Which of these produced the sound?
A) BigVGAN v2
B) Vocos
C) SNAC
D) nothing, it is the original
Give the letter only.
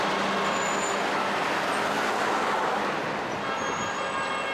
D